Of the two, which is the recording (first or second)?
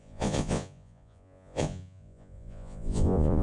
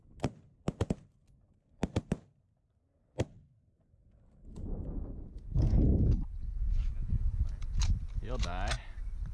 second